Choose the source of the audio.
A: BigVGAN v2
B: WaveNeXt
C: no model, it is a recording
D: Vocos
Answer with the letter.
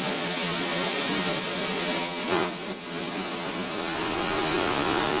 D